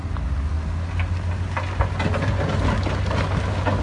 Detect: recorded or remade recorded